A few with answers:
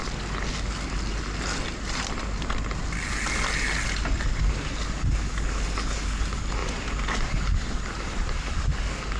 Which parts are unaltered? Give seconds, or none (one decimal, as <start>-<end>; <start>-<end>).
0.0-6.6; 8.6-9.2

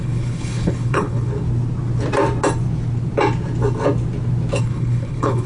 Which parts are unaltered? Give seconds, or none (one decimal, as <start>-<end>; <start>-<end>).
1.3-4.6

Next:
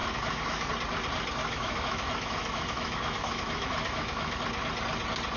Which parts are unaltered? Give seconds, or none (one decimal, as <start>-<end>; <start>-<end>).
0.7-1.4; 4.4-5.4

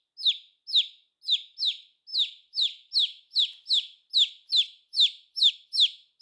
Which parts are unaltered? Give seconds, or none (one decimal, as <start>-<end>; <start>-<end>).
0.0-6.2